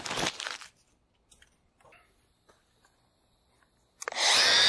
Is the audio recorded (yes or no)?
yes